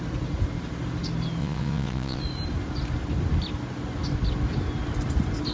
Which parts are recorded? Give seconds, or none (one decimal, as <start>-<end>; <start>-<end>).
0.0-1.4; 2.2-5.5